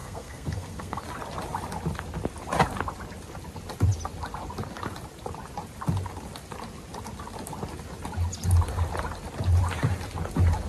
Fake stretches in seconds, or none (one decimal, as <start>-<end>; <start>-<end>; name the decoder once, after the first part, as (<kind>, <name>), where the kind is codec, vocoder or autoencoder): 0.0-1.0 (codec, SNAC)